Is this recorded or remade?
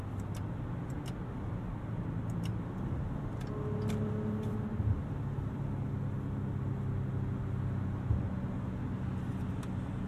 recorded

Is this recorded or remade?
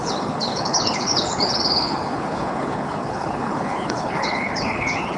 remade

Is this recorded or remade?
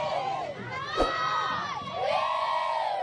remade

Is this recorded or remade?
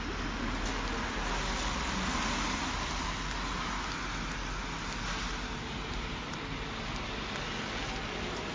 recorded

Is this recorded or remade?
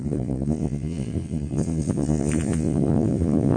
remade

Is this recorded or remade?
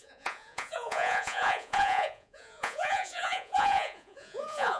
remade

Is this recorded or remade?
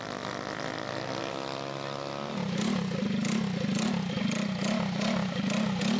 recorded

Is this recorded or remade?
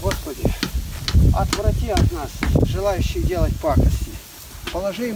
recorded